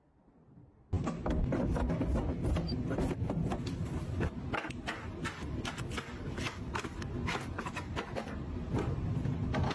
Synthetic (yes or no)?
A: no